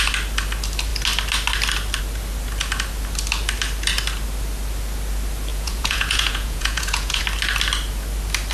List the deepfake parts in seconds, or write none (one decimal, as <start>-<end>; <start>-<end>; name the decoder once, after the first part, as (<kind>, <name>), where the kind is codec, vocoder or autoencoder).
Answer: 5.5-7.2 (vocoder, Vocos)